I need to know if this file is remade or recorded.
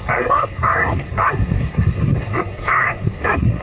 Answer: remade